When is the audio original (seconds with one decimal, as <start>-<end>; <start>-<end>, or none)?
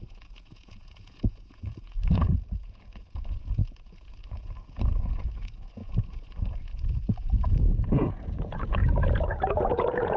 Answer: 8.8-9.5